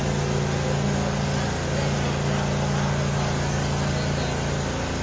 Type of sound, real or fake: real